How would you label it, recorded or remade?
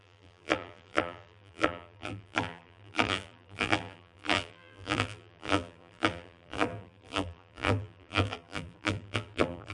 remade